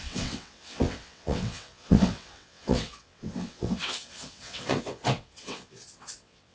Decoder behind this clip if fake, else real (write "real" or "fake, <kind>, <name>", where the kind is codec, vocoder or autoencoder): fake, vocoder, WaveNeXt